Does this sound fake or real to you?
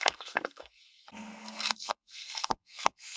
fake